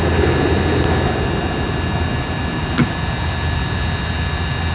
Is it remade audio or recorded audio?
recorded